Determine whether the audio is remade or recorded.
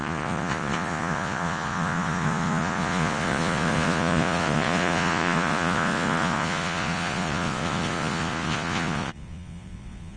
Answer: remade